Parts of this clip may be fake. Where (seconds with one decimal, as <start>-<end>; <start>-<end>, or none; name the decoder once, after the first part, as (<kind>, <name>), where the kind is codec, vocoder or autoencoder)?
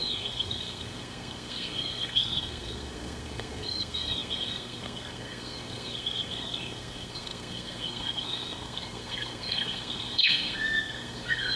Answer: 0.0-11.6 (codec, SNAC)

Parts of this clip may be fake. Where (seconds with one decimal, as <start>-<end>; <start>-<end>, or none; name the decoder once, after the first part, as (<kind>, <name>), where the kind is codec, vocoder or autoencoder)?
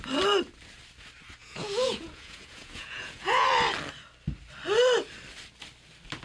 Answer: 1.4-3.5 (vocoder, Vocos)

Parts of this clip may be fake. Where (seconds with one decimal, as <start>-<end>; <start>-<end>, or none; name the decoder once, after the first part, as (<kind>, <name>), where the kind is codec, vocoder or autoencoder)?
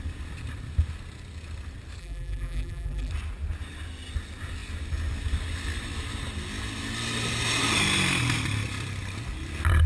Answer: 2.0-3.1 (vocoder, BigVGAN v2)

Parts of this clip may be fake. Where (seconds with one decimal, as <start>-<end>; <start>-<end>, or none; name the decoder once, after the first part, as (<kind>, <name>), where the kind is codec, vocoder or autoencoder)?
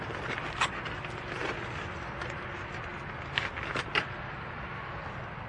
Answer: none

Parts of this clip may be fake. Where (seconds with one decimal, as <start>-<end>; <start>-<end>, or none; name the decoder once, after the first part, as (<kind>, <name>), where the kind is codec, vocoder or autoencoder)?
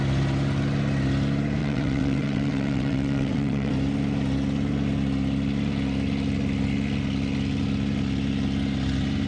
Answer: 1.6-3.7 (vocoder, WaveNeXt)